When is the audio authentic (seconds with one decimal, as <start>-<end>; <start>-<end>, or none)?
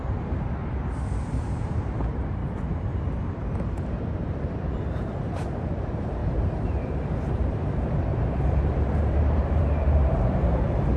0.0-1.3